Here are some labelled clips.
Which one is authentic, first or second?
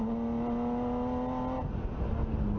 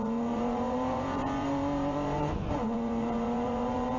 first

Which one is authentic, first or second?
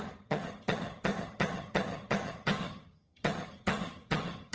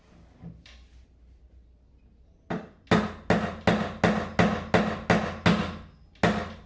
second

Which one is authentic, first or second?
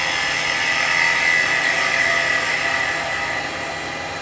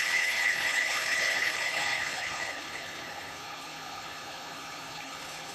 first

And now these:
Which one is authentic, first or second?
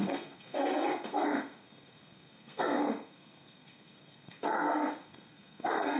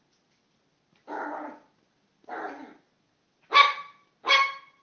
second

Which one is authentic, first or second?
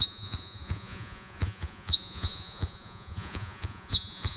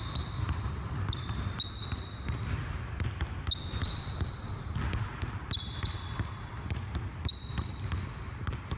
second